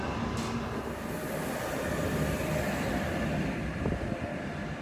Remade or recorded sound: recorded